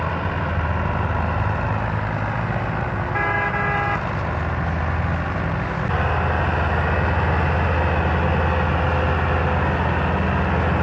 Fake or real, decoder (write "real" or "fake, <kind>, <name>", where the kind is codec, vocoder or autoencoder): real